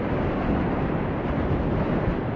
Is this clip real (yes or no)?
yes